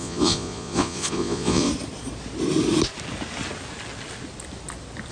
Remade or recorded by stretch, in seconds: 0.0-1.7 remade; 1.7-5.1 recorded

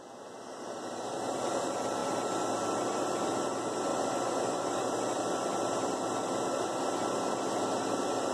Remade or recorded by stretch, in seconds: 0.0-3.9 recorded; 3.9-5.2 remade; 5.2-8.3 recorded

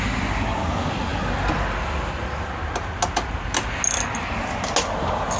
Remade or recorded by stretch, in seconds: 0.0-5.4 recorded